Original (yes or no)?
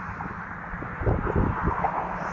yes